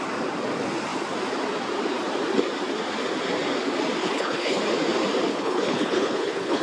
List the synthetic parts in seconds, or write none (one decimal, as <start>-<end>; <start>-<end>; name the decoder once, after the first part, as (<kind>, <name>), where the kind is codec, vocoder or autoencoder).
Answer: 4.0-4.6 (codec, HILCodec); 5.3-6.6